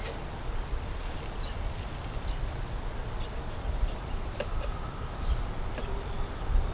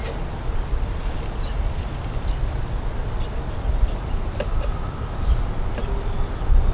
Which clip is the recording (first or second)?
second